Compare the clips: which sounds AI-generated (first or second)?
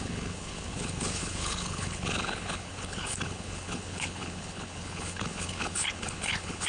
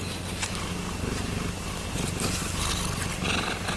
first